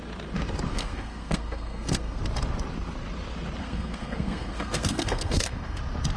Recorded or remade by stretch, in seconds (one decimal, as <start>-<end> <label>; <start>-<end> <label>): 0.0-0.7 recorded; 0.7-2.2 remade; 2.2-3.6 recorded; 3.6-5.8 remade; 5.8-6.2 recorded